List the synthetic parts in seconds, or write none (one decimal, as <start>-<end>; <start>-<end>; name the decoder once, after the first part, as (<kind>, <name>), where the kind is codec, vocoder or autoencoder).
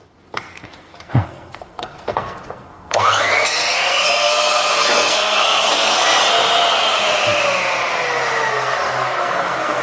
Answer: 0.0-6.2 (codec, SNAC); 8.5-9.8